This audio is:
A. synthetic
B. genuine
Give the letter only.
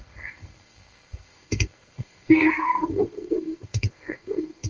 A